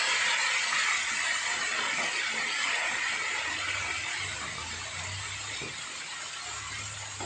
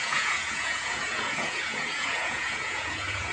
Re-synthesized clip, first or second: second